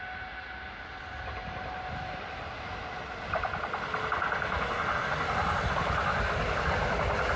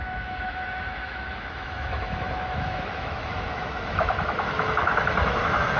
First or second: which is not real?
second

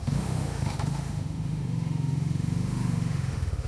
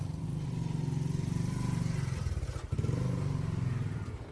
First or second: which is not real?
first